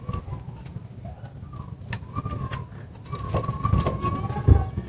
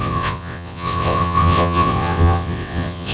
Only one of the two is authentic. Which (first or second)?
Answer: first